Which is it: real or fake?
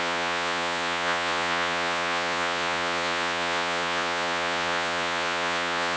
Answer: fake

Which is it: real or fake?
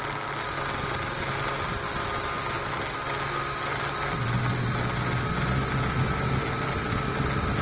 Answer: real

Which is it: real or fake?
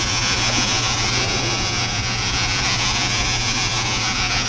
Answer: fake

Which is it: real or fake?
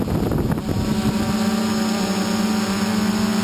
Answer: real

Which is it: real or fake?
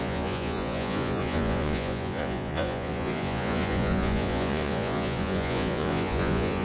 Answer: fake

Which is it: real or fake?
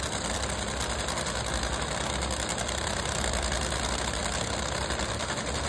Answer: real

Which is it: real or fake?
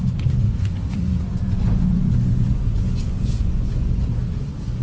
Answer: fake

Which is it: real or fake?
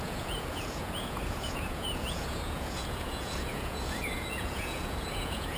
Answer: fake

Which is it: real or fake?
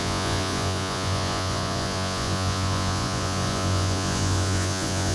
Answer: fake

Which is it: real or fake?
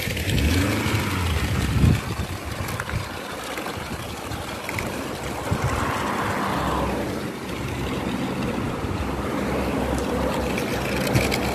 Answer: real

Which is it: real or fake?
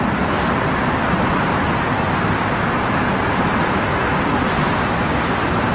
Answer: real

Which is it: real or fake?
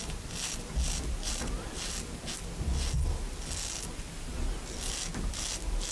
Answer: real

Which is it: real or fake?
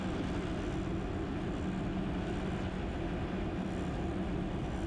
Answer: real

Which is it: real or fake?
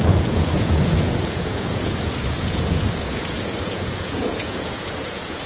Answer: fake